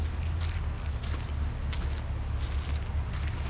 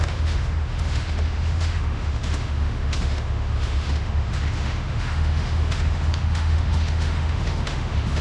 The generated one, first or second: second